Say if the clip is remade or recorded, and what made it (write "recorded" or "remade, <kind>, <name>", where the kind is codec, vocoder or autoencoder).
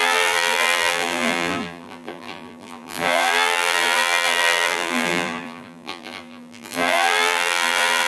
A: remade, vocoder, BigVGAN v2